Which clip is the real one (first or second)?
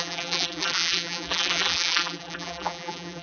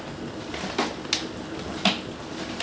second